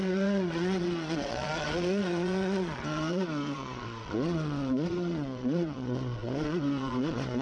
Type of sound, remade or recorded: remade